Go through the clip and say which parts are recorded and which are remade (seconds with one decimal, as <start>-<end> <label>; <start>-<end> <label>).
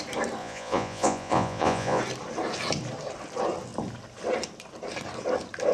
0.0-0.4 recorded; 0.4-2.0 remade; 2.0-5.7 recorded